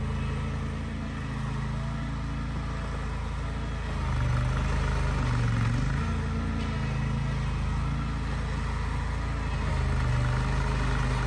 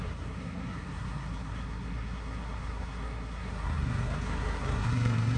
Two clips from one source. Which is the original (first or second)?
first